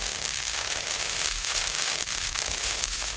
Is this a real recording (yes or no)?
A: no